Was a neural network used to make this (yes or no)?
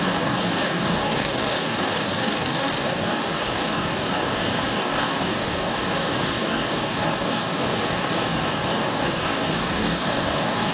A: yes